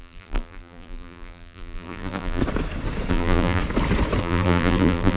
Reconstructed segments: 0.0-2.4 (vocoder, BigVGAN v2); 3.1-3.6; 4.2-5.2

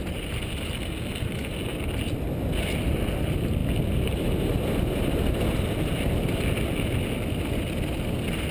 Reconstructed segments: none

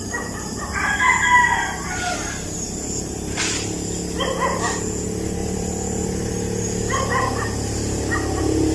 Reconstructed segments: 5.4-6.3 (vocoder, BigVGAN v2)

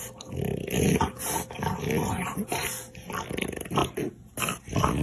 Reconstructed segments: none

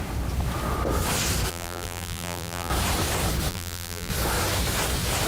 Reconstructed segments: 1.5-2.7 (vocoder, BigVGAN v2); 3.5-4.1

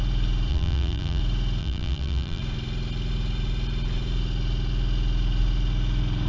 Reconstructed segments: 0.5-1.2 (vocoder, BigVGAN v2); 1.6-2.4